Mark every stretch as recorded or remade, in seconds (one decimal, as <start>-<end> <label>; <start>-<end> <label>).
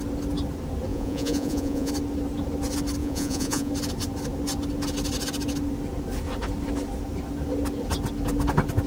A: 0.0-0.9 recorded; 0.9-1.9 remade; 1.9-3.0 recorded; 3.0-3.7 remade; 3.7-8.9 recorded